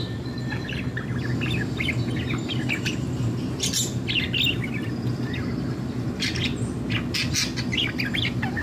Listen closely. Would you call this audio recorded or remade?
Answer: recorded